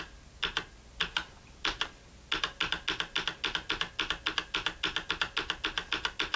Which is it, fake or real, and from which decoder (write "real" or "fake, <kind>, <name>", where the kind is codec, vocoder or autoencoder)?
real